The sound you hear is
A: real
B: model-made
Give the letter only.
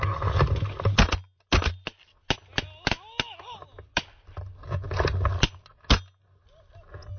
A